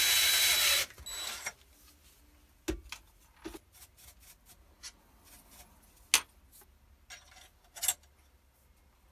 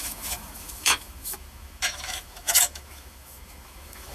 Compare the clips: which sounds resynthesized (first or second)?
second